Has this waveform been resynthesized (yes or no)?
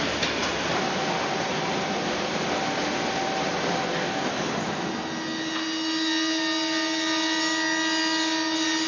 no